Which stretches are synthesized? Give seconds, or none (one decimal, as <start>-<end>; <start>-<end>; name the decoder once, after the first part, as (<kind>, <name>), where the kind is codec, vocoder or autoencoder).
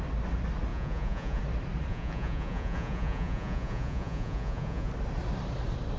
0.7-1.4 (vocoder, Vocos); 1.9-4.9